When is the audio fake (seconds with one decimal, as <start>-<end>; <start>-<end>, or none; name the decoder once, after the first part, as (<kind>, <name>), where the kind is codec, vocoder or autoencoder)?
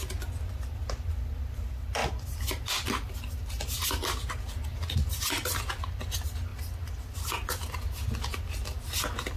none